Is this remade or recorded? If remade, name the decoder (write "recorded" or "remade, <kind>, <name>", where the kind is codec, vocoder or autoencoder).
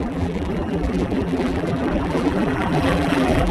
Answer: remade, vocoder, BigVGAN v2